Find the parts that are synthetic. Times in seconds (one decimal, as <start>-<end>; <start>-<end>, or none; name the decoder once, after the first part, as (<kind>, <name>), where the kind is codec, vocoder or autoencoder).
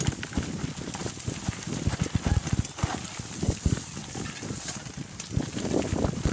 none